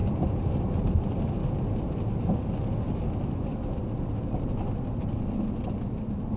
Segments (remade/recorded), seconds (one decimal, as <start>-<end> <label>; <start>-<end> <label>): 0.0-6.4 recorded